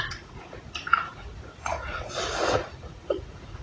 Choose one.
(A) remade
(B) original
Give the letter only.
A